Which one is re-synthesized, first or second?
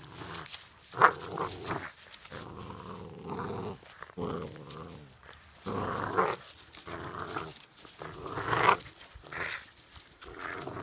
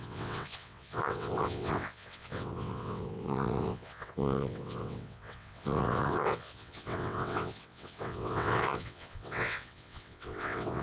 second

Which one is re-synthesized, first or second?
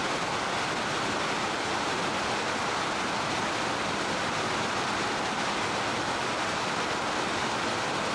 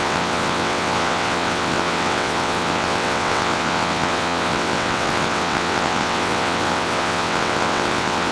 second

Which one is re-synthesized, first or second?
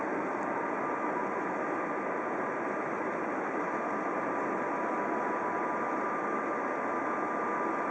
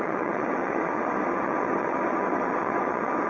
second